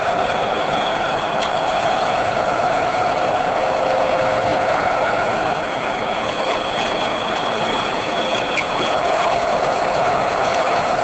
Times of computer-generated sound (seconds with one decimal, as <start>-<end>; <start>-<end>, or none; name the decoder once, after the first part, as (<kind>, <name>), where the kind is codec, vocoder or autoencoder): 0.0-11.0 (codec, HILCodec)